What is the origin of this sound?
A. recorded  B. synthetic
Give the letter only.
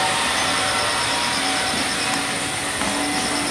A